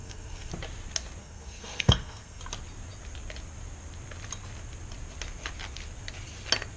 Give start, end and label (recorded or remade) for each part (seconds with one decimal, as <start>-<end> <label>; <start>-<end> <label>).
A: 0.0-0.5 remade; 0.5-1.2 recorded; 1.2-2.4 remade; 2.4-6.8 recorded